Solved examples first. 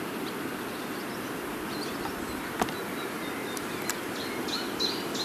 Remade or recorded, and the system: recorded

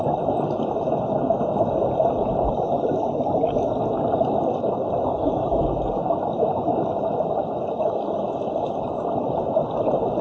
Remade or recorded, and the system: recorded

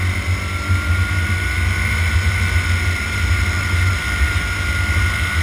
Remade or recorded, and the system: recorded